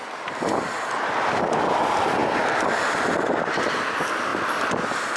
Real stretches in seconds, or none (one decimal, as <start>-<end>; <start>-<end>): 0.0-5.2